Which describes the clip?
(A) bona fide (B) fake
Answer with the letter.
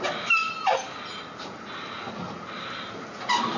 A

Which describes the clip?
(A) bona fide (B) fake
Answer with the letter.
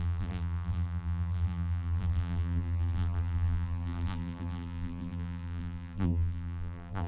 B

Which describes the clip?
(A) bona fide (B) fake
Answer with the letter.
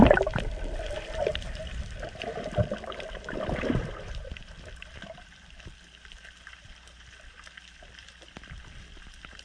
B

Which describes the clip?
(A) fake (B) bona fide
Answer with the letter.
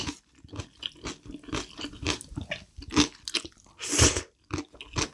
B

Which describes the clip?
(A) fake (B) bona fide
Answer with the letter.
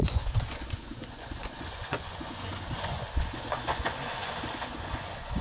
A